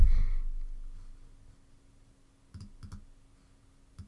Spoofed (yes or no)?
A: no